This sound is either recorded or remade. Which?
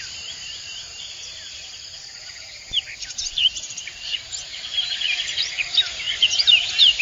remade